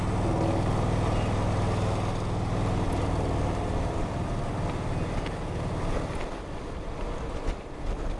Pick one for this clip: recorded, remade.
recorded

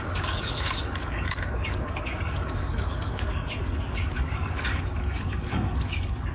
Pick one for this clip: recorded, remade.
remade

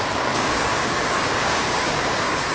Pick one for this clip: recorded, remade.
remade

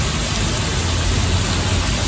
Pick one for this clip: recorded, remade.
recorded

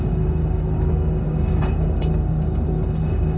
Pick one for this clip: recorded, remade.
remade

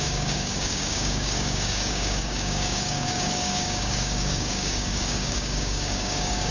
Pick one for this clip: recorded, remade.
remade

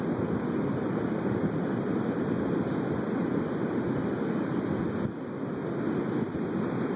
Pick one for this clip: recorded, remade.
recorded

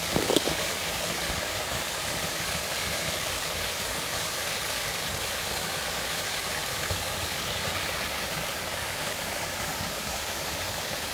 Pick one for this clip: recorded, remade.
remade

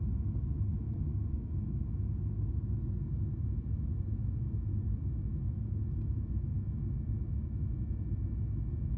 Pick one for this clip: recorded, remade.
recorded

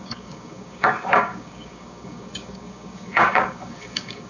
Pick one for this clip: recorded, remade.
remade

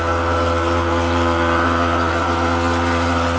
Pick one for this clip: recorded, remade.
recorded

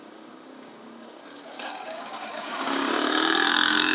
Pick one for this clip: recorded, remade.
remade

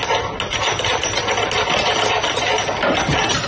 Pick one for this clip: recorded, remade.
recorded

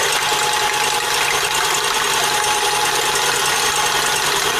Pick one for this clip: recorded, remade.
recorded